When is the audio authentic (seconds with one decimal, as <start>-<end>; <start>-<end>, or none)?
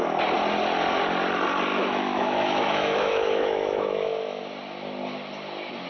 0.0-1.7; 4.4-5.9